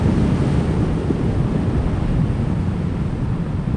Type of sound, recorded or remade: recorded